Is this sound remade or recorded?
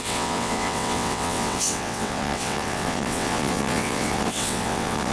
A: remade